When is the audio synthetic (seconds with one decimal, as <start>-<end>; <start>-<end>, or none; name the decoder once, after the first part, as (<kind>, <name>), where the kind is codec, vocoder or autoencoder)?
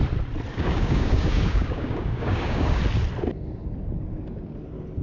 0.5-2.8 (codec, DAC)